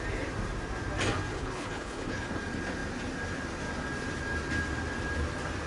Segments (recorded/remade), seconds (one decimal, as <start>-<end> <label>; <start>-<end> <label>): 0.0-1.3 recorded; 1.3-2.3 remade; 2.3-5.7 recorded